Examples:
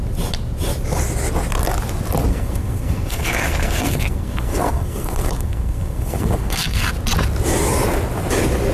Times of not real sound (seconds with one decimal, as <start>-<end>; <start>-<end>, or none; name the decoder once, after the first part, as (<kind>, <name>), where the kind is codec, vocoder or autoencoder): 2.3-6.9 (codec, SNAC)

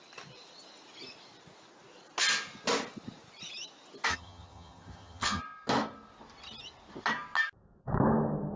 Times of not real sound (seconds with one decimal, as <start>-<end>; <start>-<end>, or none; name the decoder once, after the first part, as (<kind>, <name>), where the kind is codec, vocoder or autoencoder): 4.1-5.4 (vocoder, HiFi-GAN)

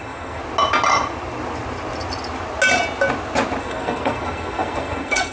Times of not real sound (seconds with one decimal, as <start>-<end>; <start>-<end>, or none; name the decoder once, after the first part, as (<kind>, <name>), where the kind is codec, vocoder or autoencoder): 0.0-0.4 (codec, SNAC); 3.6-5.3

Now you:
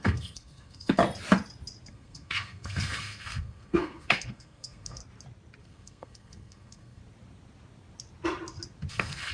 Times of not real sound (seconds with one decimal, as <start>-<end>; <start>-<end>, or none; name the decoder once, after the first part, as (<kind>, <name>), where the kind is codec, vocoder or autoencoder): 0.0-1.0 (codec, SNAC); 1.9-5.0; 5.6-7.0; 8.9-9.3

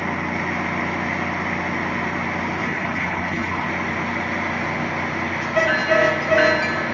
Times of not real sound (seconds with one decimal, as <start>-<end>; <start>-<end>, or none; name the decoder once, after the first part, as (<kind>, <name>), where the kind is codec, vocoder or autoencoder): 2.6-3.7 (codec, HILCodec)

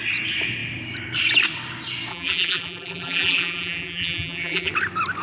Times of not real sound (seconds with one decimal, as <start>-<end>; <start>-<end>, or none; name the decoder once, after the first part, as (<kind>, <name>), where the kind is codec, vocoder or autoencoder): 2.1-4.7 (vocoder, BigVGAN v2)

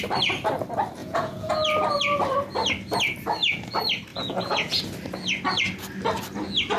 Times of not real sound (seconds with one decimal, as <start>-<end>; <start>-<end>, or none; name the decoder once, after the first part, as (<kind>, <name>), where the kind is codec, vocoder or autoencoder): 1.0-1.5 (vocoder, Vocos); 4.1-4.8